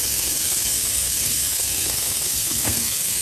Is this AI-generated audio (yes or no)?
yes